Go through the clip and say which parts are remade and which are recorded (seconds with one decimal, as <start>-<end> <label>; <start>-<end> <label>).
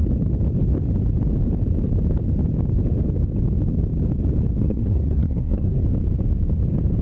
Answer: 0.0-4.6 recorded; 4.6-5.8 remade; 5.8-7.0 recorded